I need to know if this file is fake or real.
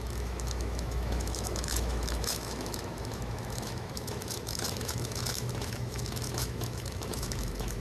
fake